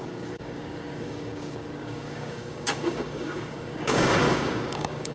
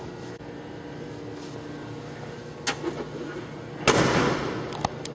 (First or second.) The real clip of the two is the second